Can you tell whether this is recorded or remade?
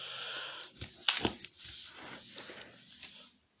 recorded